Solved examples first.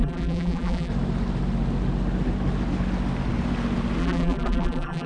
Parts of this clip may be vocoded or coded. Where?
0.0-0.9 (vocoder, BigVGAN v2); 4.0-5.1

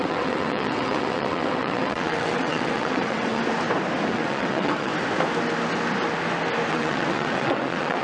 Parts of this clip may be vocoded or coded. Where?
0.0-3.4 (vocoder, WaveNeXt); 4.1-4.9; 6.7-8.0

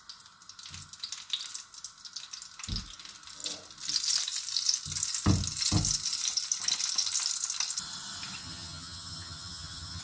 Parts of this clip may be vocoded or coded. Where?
8.4-10.0 (vocoder, HiFi-GAN)

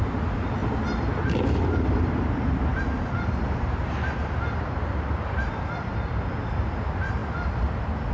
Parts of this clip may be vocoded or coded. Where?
none

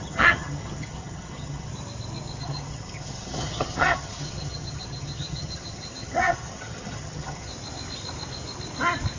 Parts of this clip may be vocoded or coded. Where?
0.0-1.7 (vocoder, HiFi-GAN); 2.4-7.5

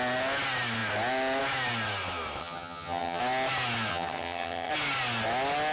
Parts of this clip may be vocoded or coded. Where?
2.4-3.2 (vocoder, HiFi-GAN); 3.9-4.7

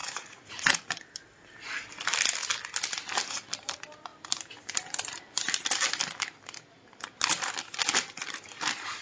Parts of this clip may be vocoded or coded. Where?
0.0-0.8 (vocoder, Vocos)

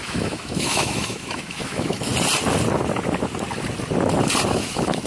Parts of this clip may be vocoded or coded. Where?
0.0-2.1 (autoencoder, DAC-VAE); 4.5-5.1